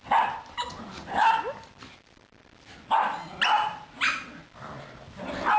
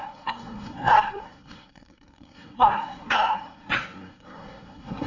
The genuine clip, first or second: first